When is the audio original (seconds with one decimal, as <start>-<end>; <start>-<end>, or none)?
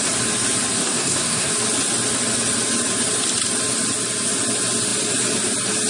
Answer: 0.0-0.8; 1.5-5.9